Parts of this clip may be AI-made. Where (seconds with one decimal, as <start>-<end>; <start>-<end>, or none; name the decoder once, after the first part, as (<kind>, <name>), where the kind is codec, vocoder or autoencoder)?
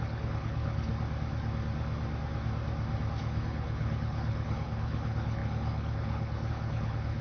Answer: 0.0-0.9 (codec, HILCodec); 3.2-7.2